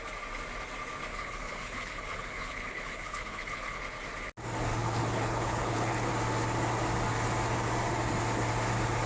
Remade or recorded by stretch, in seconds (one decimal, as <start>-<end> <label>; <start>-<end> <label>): 0.0-1.1 recorded; 1.1-3.8 remade; 3.8-4.7 recorded; 4.7-6.1 remade; 6.1-9.1 recorded